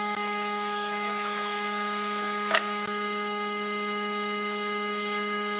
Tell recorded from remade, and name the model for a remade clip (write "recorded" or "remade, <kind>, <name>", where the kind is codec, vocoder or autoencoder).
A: remade, autoencoder, DAC-VAE